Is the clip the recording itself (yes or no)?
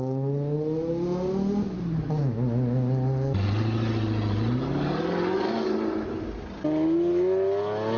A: yes